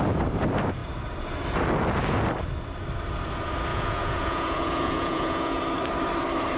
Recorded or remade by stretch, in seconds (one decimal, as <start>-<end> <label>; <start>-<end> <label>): 0.0-3.7 recorded; 3.7-5.6 remade; 5.6-6.6 recorded